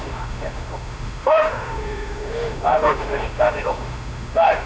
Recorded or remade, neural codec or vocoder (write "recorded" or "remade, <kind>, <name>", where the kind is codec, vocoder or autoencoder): remade, autoencoder, DAC-VAE